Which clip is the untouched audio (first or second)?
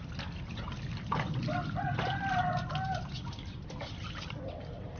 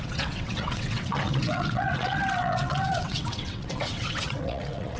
first